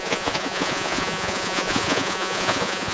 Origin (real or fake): fake